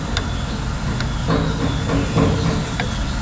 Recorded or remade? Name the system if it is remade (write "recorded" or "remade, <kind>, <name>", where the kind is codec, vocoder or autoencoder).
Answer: recorded